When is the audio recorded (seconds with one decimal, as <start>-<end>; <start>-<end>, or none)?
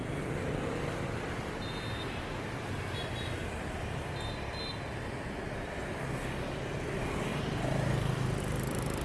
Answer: 0.0-9.0